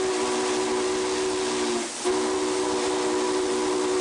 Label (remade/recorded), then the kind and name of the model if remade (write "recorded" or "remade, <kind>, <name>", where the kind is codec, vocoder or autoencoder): recorded